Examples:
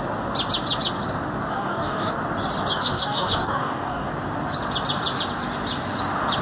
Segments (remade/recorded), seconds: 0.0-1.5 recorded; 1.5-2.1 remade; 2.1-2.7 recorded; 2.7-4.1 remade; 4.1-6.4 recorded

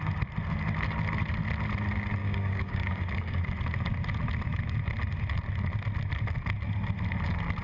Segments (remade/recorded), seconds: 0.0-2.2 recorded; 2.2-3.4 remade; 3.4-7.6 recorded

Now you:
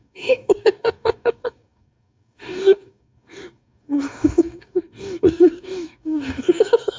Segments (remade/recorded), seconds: 0.0-7.0 remade

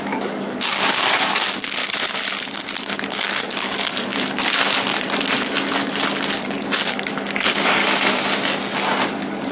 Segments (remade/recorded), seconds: 0.0-1.8 remade; 1.8-2.4 recorded; 2.4-4.1 remade; 4.1-6.3 recorded; 6.3-7.8 remade; 7.8-9.1 recorded; 9.1-9.5 remade